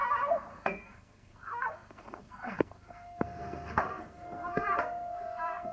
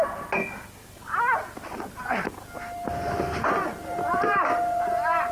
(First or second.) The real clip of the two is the second